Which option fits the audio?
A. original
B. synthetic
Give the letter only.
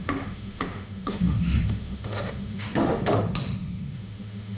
B